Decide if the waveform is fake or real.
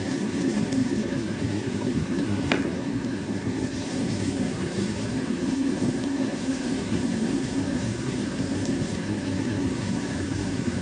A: fake